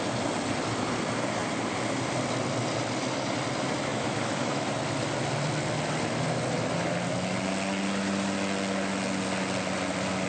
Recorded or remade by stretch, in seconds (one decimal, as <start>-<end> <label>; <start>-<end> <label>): 0.0-3.9 recorded; 3.9-4.7 remade; 4.7-10.3 recorded